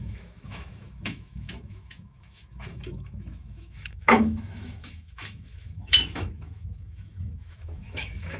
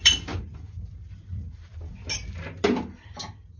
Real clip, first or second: second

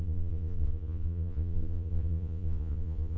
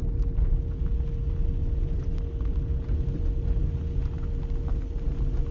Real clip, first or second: second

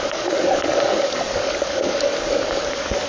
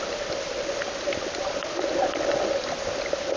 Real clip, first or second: second